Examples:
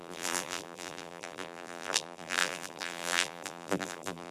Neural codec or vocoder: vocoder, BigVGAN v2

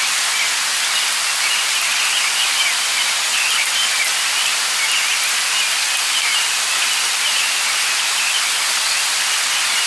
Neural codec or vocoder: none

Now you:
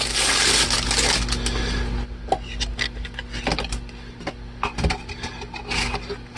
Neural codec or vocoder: none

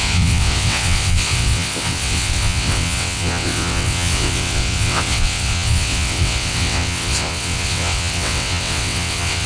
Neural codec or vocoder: vocoder, WaveNeXt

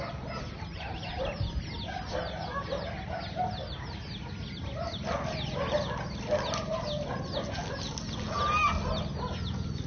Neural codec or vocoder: none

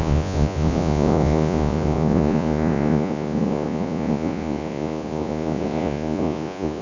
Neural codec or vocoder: vocoder, Vocos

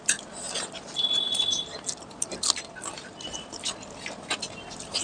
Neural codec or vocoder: none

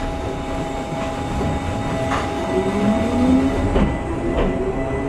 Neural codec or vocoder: none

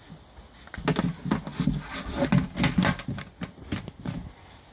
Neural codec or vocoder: none